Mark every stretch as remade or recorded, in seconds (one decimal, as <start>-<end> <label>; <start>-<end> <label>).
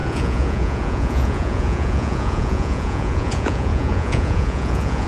0.0-5.1 remade